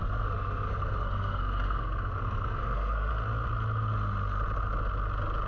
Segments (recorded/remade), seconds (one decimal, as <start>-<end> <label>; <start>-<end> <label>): 0.0-3.1 remade; 3.1-5.5 recorded